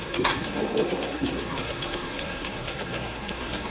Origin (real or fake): fake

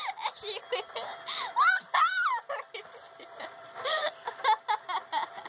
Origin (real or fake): real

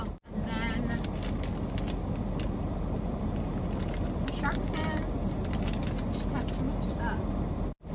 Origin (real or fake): real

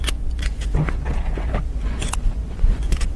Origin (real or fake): fake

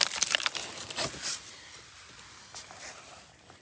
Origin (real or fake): real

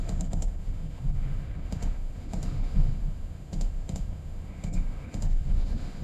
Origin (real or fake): fake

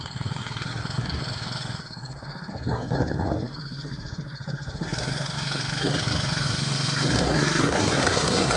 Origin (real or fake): fake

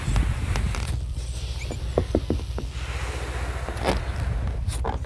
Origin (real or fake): real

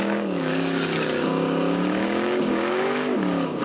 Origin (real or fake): fake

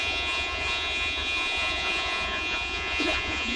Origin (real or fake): fake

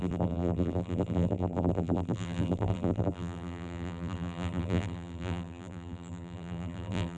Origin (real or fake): fake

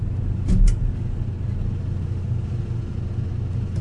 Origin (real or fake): real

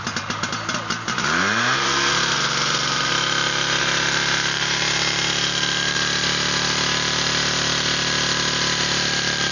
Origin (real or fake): fake